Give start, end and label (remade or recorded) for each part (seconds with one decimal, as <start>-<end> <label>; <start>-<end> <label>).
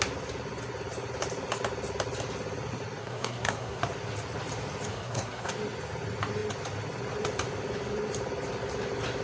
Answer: 0.0-3.0 recorded; 3.0-3.8 remade; 3.8-4.9 recorded; 4.9-5.5 remade; 5.5-9.2 recorded